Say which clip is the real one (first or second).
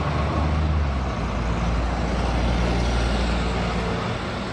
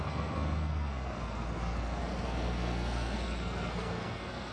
first